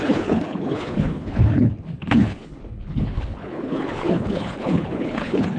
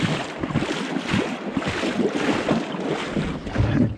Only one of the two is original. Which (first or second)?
second